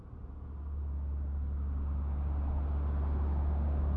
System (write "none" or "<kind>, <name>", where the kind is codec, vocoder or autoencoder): none